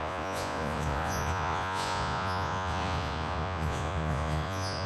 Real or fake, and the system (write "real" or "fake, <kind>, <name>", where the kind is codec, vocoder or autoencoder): fake, vocoder, Vocos